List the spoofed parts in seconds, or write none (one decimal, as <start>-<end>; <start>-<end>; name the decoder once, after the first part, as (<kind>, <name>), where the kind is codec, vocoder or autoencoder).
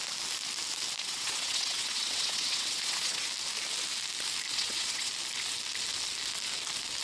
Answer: 1.0-3.3 (vocoder, WaveNeXt); 4.5-5.1